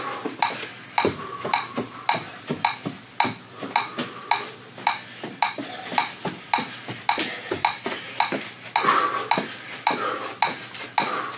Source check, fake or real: real